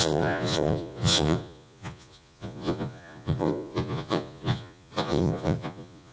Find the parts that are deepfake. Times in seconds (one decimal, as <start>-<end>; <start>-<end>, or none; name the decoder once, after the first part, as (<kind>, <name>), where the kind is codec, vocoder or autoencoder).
0.0-6.1 (vocoder, Vocos)